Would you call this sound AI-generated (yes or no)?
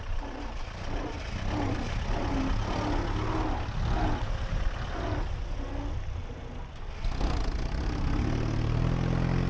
no